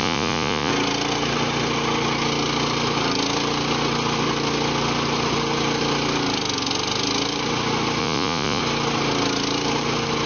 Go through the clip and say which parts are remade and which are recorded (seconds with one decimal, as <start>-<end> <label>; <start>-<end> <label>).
0.0-0.7 remade; 0.7-8.0 recorded; 8.0-8.6 remade; 8.6-10.3 recorded